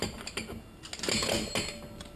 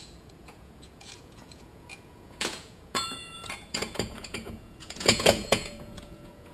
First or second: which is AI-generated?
second